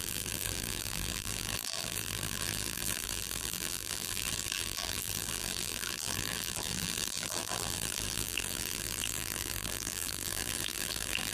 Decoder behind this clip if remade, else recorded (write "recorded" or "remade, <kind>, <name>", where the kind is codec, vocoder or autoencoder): remade, vocoder, BigVGAN v2